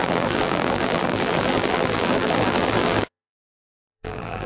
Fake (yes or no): yes